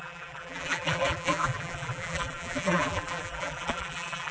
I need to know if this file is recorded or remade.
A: remade